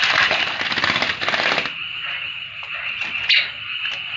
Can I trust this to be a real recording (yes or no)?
yes